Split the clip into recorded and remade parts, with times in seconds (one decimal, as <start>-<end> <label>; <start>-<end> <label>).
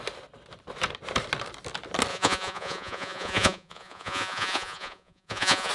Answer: 0.0-2.1 recorded; 2.1-5.7 remade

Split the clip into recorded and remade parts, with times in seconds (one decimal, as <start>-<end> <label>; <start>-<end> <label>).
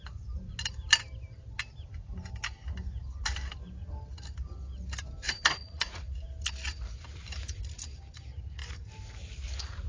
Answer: 0.0-5.6 recorded; 5.6-6.1 remade; 6.1-9.9 recorded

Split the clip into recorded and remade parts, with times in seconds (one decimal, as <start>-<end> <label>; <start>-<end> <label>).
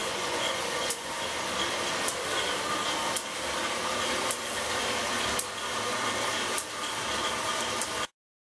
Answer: 0.0-1.1 remade; 1.1-8.5 recorded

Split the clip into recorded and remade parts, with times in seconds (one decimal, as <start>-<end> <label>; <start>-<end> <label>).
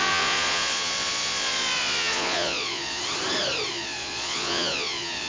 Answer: 0.0-3.0 remade; 3.0-3.7 recorded; 3.7-5.3 remade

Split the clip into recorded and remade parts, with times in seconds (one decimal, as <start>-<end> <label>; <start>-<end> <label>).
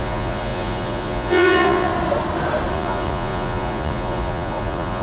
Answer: 0.0-1.9 remade; 1.9-2.7 recorded; 2.7-5.0 remade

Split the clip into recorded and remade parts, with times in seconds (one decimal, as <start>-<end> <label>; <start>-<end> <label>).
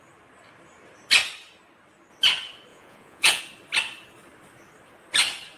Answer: 0.0-2.7 recorded; 2.7-3.4 remade; 3.4-5.6 recorded